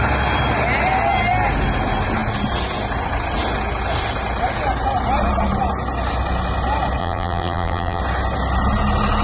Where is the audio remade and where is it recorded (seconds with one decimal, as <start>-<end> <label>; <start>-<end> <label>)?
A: 0.0-7.0 recorded; 7.0-8.0 remade; 8.0-9.2 recorded